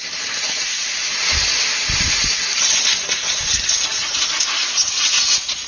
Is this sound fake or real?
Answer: real